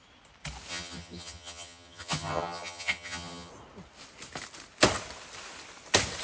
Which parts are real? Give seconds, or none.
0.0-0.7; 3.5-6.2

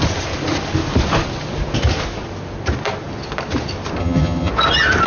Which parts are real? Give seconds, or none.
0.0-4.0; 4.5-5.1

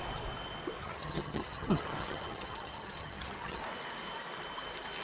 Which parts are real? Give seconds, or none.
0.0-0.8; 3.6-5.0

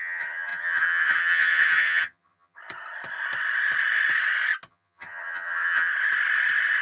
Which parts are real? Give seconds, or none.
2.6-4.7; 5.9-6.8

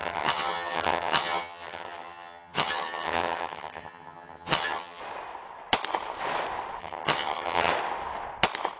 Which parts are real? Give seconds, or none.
5.0-6.8; 7.7-8.8

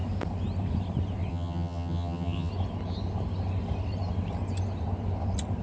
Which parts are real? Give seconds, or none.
0.0-1.3; 2.5-5.6